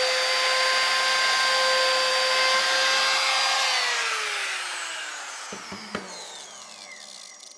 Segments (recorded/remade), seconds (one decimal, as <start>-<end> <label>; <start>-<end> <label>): 0.0-7.6 recorded